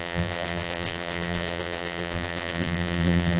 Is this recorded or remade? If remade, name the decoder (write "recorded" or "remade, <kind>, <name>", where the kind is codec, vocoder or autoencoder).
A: remade, vocoder, BigVGAN v2